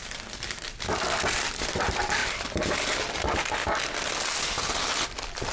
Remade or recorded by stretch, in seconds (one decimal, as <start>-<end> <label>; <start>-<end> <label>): 0.0-5.5 recorded